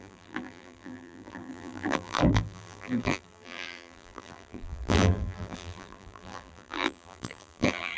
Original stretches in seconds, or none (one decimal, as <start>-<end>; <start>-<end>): none